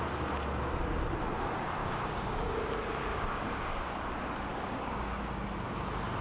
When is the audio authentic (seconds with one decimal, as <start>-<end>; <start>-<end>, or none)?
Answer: 0.0-1.8; 2.5-3.1; 3.9-4.5; 5.2-6.2